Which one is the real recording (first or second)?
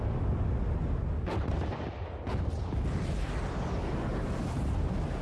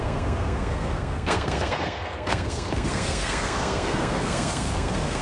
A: first